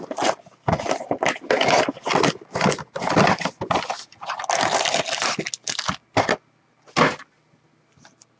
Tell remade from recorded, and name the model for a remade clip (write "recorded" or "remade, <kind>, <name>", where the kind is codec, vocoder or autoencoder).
recorded